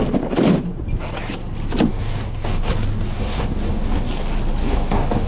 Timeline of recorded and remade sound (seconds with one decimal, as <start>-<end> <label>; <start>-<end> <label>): 0.0-1.9 recorded; 1.9-2.7 remade; 2.7-3.1 recorded; 3.1-4.1 remade; 4.1-4.6 recorded; 4.6-5.3 remade